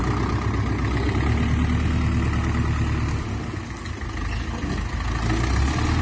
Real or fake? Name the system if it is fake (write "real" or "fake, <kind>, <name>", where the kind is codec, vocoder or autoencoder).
real